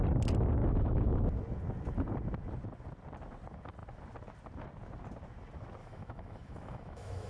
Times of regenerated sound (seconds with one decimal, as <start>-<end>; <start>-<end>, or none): 0.6-1.2; 5.8-7.3